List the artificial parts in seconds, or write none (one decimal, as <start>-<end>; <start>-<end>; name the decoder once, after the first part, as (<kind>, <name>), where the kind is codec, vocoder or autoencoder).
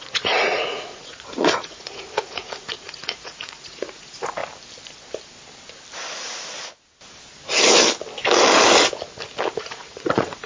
0.0-4.4 (vocoder, Vocos); 9.6-10.5